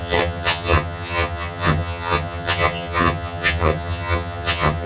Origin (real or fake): fake